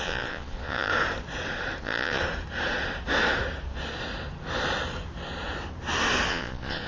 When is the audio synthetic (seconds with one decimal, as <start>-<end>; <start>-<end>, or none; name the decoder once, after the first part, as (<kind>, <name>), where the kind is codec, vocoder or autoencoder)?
0.0-0.9 (vocoder, Vocos); 1.8-2.2; 6.3-6.9